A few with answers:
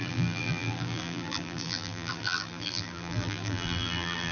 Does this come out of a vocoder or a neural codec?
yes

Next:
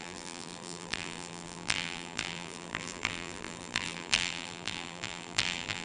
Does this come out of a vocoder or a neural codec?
yes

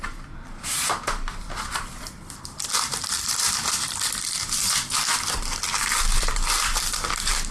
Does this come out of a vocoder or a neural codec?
yes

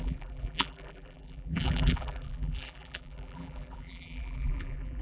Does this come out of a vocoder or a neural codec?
yes